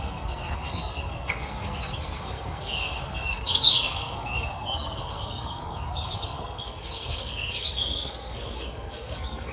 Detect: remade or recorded remade